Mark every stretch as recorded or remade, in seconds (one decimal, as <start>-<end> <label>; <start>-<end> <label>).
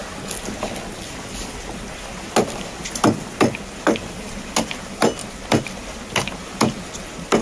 0.0-7.4 recorded